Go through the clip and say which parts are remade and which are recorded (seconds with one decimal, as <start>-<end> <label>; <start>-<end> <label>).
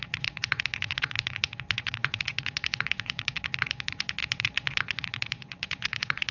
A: 0.0-6.3 remade